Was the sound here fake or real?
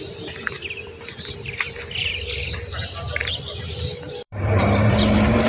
fake